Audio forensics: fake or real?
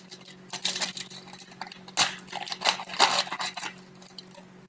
real